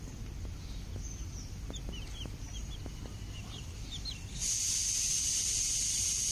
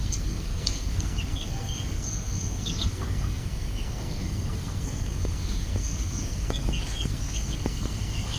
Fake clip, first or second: second